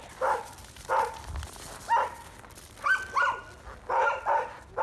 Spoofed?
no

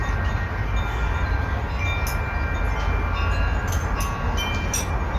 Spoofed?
no